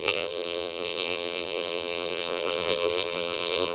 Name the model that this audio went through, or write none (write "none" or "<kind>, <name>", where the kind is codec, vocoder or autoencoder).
vocoder, BigVGAN v2